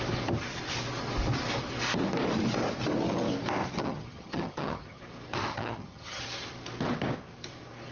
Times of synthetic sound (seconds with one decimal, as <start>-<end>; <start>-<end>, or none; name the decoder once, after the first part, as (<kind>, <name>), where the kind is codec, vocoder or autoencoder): 3.8-5.0 (vocoder, HiFi-GAN); 5.5-6.2